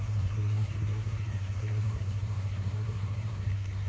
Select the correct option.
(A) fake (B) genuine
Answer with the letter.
A